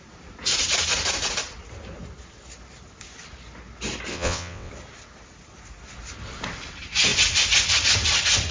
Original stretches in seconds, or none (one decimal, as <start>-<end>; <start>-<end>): 0.0-4.1; 4.7-8.5